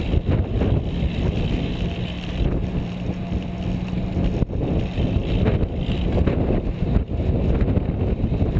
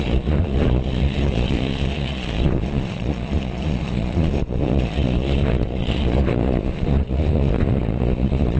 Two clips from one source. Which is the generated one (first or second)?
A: second